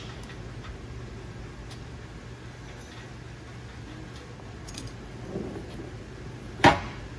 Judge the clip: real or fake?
real